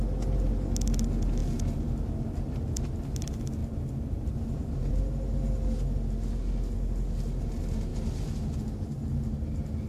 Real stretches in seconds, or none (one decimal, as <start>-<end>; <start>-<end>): 0.0-9.9